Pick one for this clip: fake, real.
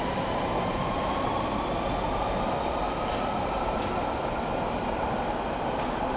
real